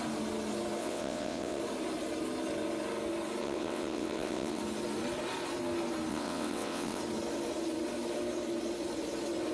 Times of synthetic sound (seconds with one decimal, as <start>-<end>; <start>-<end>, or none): 0.8-1.6; 3.4-4.6; 6.1-7.0